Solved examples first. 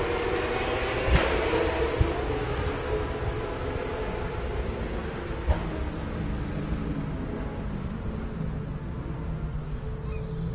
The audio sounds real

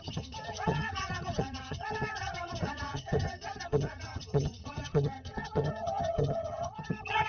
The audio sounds fake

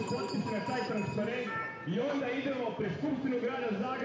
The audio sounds real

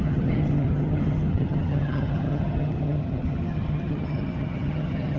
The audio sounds fake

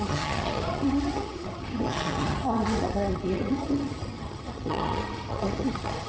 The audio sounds fake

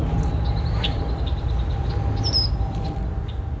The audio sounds real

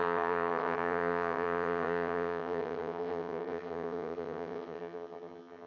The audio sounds fake